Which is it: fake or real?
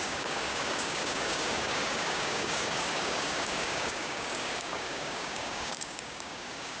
fake